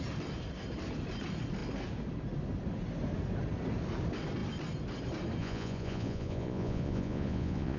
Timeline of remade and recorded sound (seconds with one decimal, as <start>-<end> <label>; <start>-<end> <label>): 0.0-5.4 recorded; 5.4-7.8 remade